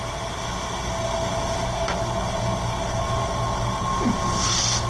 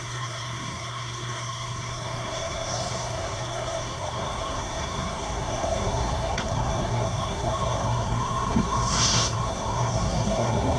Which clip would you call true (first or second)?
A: first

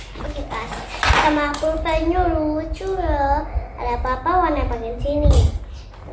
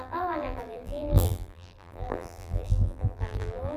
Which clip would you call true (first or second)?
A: first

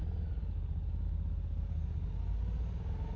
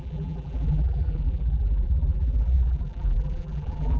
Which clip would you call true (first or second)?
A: first